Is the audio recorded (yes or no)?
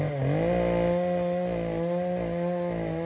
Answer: yes